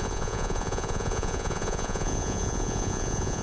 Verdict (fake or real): fake